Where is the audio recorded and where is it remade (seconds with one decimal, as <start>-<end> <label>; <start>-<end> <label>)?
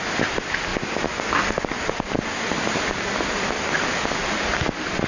0.0-5.1 recorded